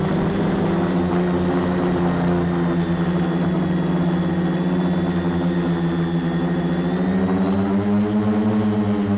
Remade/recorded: recorded